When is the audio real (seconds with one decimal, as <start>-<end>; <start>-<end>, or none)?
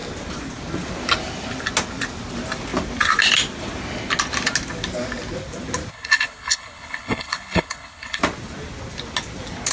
0.0-5.9; 8.2-9.7